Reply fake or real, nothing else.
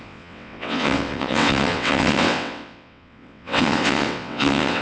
fake